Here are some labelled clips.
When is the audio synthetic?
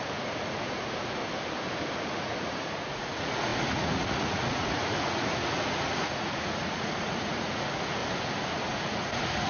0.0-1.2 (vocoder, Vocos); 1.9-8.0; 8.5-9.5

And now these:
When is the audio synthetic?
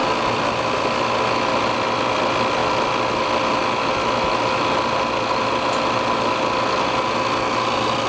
none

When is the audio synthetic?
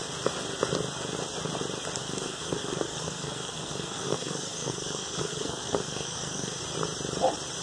2.0-6.6 (codec, SNAC)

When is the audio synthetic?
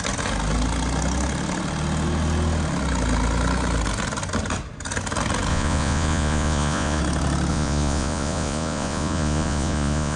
5.5-7.0 (vocoder, Vocos); 7.5-10.2